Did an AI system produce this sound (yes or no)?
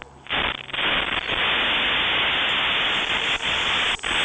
no